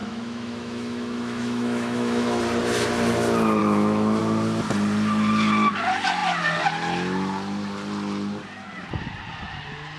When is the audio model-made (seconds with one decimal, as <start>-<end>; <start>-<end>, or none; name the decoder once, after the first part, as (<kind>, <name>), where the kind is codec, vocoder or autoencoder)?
0.0-2.4 (autoencoder, DAC-VAE); 3.6-4.2